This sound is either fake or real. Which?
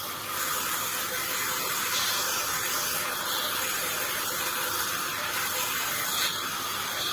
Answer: real